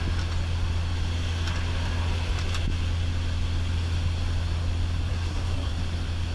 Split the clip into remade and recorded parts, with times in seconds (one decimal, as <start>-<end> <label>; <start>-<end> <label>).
0.0-5.1 recorded; 5.1-5.7 remade; 5.7-6.3 recorded